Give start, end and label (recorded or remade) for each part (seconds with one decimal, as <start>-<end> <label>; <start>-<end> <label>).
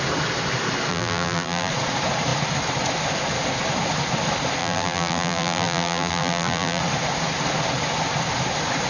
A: 0.0-0.9 recorded; 0.9-1.7 remade; 1.7-4.6 recorded; 4.6-6.8 remade; 6.8-8.9 recorded